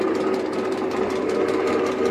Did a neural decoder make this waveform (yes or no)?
no